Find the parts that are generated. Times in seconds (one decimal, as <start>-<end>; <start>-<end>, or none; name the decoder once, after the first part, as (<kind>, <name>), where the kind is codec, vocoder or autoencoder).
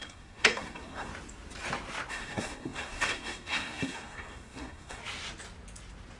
0.0-1.1 (codec, SNAC); 2.1-5.0